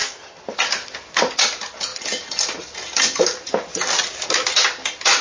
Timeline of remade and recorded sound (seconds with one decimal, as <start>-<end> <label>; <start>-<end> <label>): 0.0-5.2 recorded